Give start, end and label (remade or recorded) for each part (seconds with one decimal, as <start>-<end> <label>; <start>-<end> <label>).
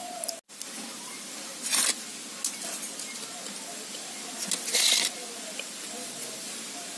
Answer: 0.0-7.0 recorded